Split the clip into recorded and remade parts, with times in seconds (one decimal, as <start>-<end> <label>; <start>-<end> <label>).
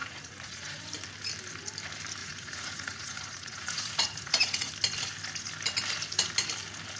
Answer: 0.0-0.8 remade; 0.8-2.2 recorded; 2.2-4.7 remade; 4.7-7.0 recorded